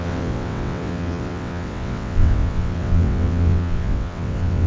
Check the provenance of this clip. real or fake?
fake